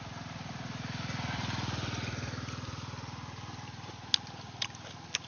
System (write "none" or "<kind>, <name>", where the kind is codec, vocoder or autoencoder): none